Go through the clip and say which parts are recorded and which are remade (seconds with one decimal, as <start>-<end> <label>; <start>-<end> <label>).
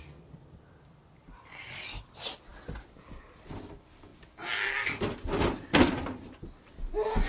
0.0-7.3 recorded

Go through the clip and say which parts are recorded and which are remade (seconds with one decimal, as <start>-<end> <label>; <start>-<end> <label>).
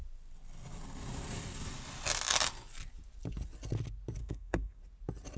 0.0-4.2 recorded; 4.2-4.8 remade; 4.8-5.4 recorded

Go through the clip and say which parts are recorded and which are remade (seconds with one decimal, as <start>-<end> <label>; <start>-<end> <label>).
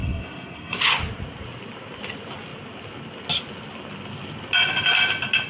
0.0-0.8 remade; 0.8-5.5 recorded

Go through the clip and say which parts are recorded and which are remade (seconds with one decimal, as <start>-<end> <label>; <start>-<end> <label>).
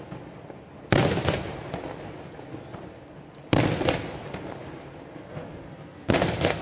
0.0-5.3 recorded; 5.3-6.1 remade; 6.1-6.6 recorded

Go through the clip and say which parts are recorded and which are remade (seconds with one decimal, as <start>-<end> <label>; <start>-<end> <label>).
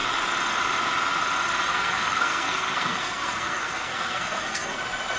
0.0-1.7 recorded; 1.7-4.8 remade; 4.8-5.2 recorded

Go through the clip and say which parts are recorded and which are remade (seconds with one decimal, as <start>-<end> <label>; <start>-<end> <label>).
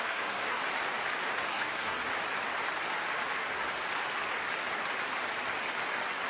0.0-0.6 remade; 0.6-1.5 recorded; 1.5-2.1 remade; 2.1-6.3 recorded